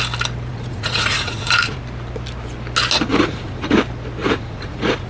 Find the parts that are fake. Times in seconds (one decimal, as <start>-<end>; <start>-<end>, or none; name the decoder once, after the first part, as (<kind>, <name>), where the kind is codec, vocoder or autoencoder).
0.5-1.8 (vocoder, Vocos); 3.1-3.8; 4.2-5.1